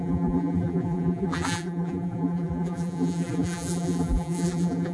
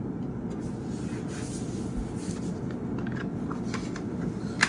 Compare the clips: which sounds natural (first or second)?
second